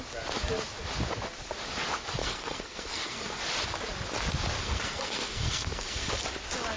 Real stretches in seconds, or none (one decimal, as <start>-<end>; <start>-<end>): 0.0-2.2; 3.4-4.6; 6.1-6.8